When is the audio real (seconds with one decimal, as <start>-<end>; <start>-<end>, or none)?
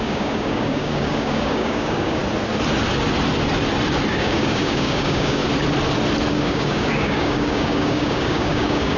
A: 2.2-4.1; 5.4-6.3